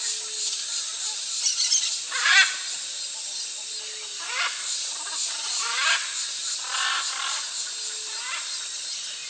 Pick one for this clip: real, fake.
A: real